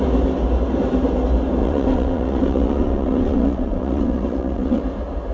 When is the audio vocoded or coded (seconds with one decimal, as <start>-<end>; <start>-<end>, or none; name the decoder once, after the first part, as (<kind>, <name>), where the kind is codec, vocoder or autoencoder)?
1.6-4.8 (vocoder, WaveNeXt)